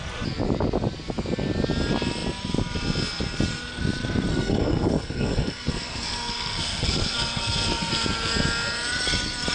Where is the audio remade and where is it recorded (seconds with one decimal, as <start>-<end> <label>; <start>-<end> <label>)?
0.0-4.3 recorded; 4.3-7.9 remade; 7.9-9.5 recorded